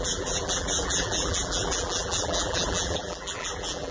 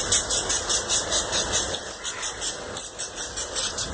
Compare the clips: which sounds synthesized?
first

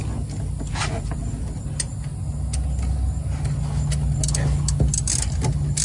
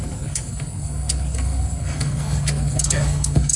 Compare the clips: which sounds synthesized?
second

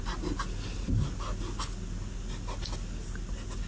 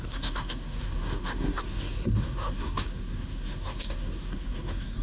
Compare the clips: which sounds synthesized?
second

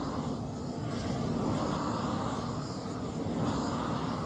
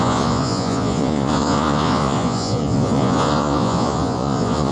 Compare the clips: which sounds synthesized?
second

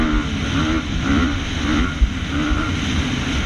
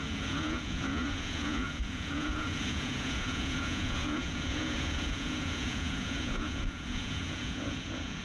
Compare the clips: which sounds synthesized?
second